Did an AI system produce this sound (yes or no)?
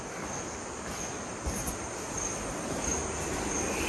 no